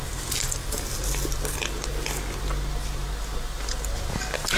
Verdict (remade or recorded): recorded